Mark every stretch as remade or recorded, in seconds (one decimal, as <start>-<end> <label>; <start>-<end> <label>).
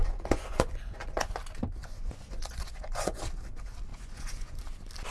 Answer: 0.0-1.3 remade; 1.3-1.8 recorded; 1.8-3.2 remade; 3.2-3.9 recorded; 3.9-4.6 remade; 4.6-5.1 recorded